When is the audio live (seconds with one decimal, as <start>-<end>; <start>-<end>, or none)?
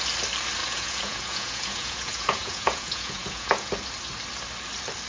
0.0-0.6; 3.7-5.1